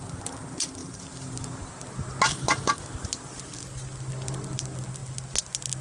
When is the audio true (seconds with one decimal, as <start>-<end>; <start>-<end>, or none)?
0.0-0.8; 1.6-5.8